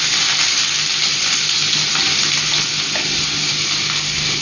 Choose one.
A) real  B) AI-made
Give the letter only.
A